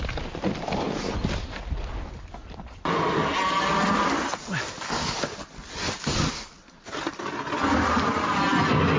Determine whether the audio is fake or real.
real